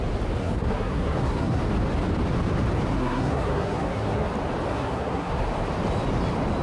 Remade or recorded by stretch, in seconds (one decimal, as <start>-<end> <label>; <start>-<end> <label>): 0.0-0.4 recorded; 0.4-1.6 remade; 1.6-2.9 recorded; 2.9-4.3 remade; 4.3-4.7 recorded; 4.7-5.4 remade; 5.4-6.6 recorded